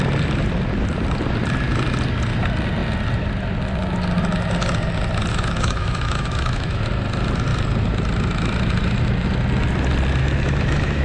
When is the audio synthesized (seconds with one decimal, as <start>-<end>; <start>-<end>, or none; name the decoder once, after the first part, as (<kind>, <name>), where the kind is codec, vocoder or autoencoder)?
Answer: 5.3-6.8 (autoencoder, DAC-VAE); 10.2-11.0